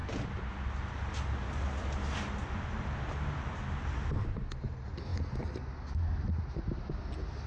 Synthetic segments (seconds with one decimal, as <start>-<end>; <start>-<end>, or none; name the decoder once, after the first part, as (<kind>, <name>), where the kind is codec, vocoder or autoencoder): none